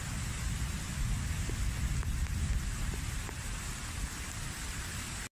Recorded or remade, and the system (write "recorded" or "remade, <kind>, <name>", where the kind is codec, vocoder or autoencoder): recorded